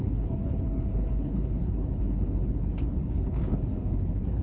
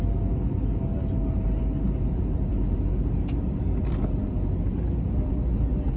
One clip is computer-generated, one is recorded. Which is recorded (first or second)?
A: second